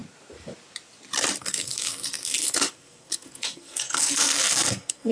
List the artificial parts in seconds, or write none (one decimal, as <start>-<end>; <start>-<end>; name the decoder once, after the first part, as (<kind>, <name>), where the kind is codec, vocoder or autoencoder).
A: 1.4-5.1 (codec, SNAC)